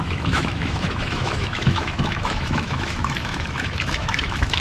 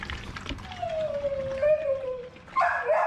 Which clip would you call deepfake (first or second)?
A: first